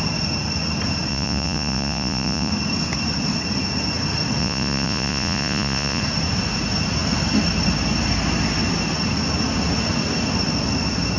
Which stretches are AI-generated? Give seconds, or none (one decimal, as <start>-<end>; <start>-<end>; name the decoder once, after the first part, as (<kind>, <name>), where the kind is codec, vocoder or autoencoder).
1.1-2.5 (vocoder, Vocos); 4.4-6.0